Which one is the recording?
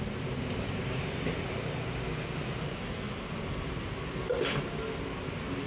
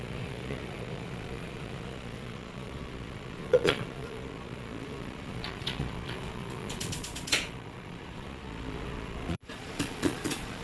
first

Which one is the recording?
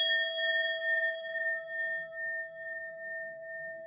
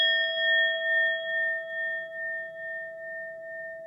second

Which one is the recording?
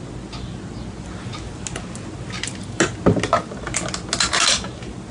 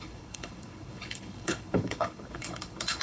first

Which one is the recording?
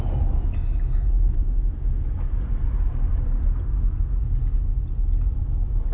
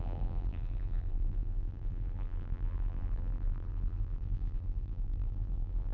first